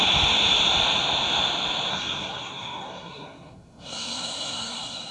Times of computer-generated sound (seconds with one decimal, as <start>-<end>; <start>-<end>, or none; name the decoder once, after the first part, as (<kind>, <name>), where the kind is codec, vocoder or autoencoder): 1.9-5.1 (codec, SNAC)